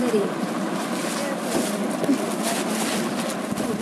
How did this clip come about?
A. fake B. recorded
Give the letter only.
B